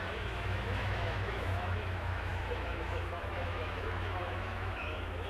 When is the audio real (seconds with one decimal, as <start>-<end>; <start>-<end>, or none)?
none